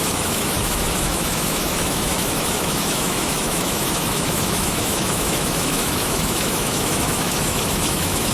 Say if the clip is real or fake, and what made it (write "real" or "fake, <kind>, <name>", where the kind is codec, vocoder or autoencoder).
fake, autoencoder, DAC-VAE